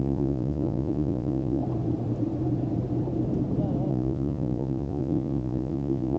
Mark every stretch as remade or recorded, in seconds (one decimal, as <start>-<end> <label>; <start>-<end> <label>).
0.0-1.6 remade; 1.6-3.9 recorded; 3.9-6.2 remade